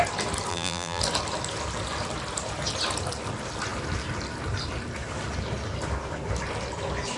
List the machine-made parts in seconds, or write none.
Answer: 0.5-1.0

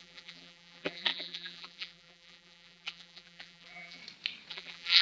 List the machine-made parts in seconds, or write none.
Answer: 0.0-4.0; 4.5-5.0

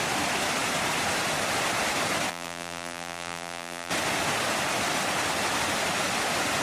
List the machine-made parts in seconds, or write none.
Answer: 2.3-3.9

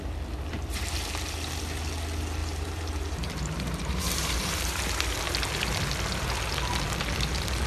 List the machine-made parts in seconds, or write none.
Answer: 2.4-4.9

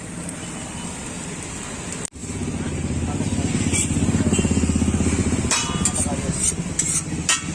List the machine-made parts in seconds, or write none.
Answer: 5.2-5.7

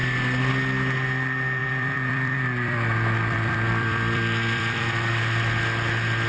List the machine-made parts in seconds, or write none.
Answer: 1.6-5.1

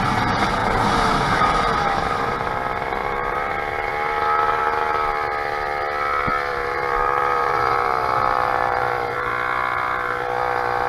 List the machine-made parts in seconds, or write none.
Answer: 0.6-2.5; 3.0-3.5; 6.5-9.3

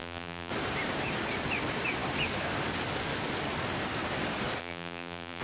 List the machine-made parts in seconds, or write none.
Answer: 0.0-0.5; 4.6-5.4